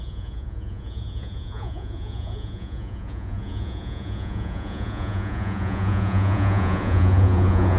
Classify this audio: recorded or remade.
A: remade